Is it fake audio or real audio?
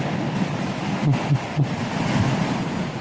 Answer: real